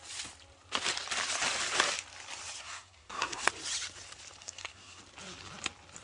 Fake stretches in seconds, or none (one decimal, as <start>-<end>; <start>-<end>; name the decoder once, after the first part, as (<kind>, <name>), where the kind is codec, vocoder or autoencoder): 2.6-3.5 (codec, SNAC); 4.4-5.0

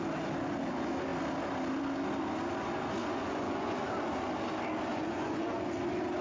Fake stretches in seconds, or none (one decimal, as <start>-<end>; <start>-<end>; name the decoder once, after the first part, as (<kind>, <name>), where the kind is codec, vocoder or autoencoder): 3.0-3.9 (vocoder, Vocos); 4.9-5.7

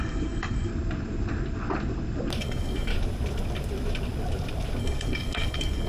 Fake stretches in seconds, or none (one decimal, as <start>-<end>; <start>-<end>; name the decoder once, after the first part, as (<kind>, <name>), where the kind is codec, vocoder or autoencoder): 0.0-0.7 (codec, DAC); 2.4-2.9; 4.8-5.9

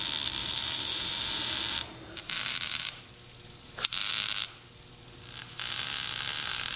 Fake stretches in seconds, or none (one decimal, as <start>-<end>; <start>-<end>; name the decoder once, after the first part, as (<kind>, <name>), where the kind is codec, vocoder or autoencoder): 0.4-3.0 (vocoder, BigVGAN v2)

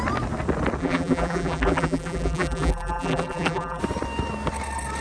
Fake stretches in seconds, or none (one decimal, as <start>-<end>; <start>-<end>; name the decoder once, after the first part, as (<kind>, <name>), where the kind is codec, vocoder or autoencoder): 0.8-3.8 (vocoder, BigVGAN v2)

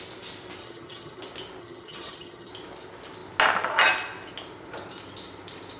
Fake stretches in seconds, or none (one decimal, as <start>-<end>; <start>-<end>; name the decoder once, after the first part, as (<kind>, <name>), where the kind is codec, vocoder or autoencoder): 0.6-1.2 (vocoder, HiFi-GAN); 1.6-2.5